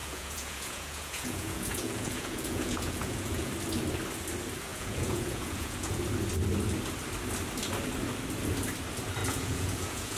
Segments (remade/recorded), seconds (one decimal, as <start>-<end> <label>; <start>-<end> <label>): 0.0-3.5 remade; 3.5-4.7 recorded; 4.7-6.0 remade; 6.0-9.2 recorded; 9.2-10.2 remade